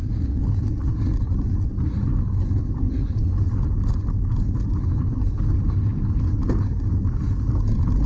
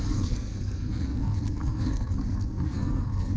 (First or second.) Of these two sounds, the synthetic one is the second